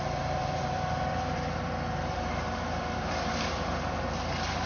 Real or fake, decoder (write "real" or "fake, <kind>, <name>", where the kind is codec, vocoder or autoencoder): fake, vocoder, BigVGAN v2